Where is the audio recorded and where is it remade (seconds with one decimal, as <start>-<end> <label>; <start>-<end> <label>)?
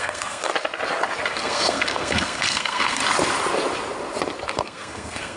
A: 0.0-0.5 remade; 0.5-1.3 recorded; 1.3-3.0 remade; 3.0-4.5 recorded; 4.5-5.4 remade